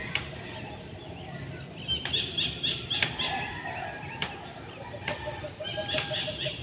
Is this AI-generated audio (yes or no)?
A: no